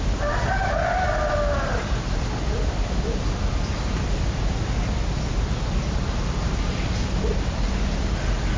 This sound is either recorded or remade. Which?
recorded